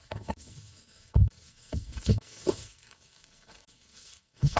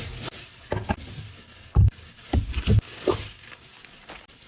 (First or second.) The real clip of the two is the second